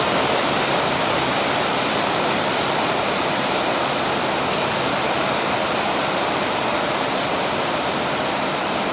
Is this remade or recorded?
recorded